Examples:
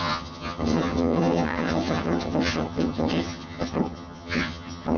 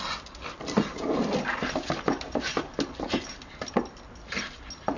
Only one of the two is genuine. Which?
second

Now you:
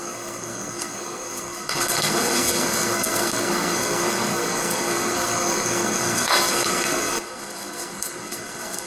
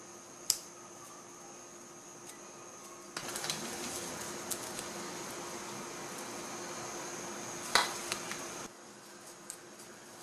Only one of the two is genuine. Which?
second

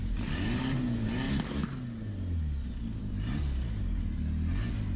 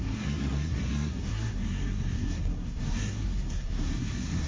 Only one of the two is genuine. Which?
first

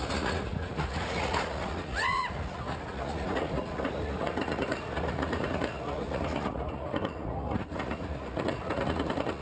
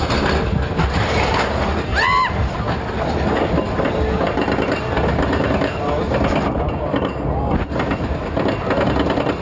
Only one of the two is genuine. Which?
second